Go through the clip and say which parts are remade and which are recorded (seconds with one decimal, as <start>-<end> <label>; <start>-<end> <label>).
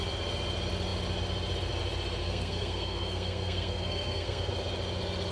0.0-2.2 recorded; 2.2-4.5 remade; 4.5-5.3 recorded